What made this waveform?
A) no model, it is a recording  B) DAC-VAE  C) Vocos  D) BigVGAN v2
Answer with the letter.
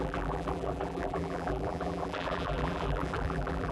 D